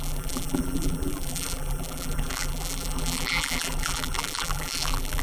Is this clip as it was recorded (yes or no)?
no